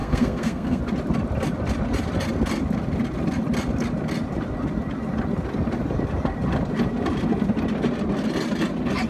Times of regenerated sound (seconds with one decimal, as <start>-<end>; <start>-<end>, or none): 0.0-0.8